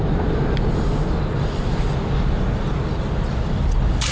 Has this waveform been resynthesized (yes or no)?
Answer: no